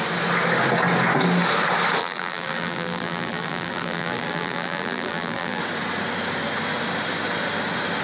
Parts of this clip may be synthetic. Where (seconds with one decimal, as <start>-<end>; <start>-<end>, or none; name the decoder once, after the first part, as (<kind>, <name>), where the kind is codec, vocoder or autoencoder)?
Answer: 2.0-5.6 (vocoder, BigVGAN v2)